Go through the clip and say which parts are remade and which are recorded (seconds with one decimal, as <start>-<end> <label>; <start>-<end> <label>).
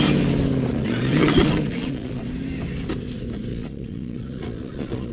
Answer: 0.0-0.7 recorded; 0.7-2.2 remade; 2.2-3.5 recorded; 3.5-5.1 remade